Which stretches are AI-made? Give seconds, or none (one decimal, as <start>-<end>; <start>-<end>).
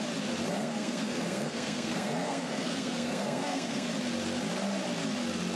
0.5-3.9